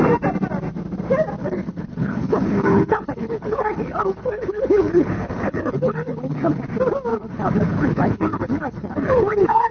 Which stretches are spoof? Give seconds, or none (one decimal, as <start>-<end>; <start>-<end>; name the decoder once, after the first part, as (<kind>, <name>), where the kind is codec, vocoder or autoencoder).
1.4-6.6 (codec, HILCodec); 7.1-9.7

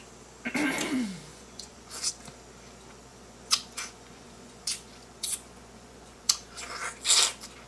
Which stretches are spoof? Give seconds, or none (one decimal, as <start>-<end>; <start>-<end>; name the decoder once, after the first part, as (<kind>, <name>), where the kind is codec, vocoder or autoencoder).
1.3-2.1 (vocoder, Vocos); 3.1-6.8

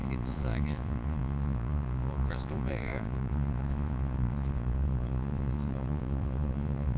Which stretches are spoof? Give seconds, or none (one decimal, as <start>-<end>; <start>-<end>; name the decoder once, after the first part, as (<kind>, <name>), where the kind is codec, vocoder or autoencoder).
0.0-7.0 (vocoder, Vocos)

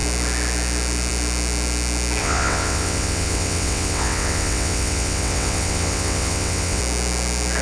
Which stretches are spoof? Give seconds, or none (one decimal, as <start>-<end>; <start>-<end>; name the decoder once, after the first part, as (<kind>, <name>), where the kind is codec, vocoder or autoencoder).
2.2-6.8 (vocoder, WaveNeXt)